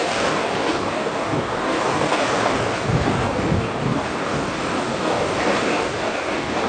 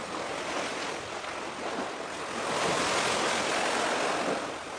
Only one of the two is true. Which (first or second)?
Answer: second